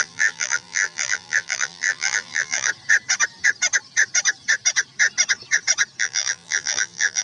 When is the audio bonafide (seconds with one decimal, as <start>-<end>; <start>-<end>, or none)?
2.7-6.0